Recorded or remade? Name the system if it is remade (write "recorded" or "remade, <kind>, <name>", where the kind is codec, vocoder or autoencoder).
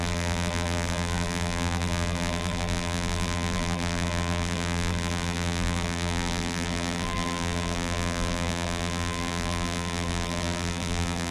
remade, vocoder, BigVGAN v2